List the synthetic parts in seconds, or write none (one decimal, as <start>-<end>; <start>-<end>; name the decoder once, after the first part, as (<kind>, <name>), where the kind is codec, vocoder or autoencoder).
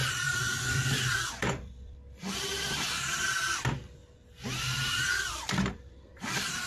0.0-2.5 (vocoder, BigVGAN v2); 3.4-4.0; 4.6-6.7